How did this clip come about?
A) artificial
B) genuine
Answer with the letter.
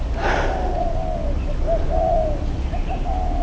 B